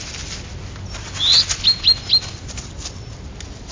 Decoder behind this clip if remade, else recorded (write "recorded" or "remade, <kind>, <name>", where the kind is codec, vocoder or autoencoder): recorded